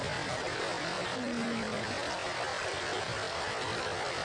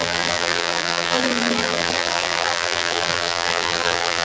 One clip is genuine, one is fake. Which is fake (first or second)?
second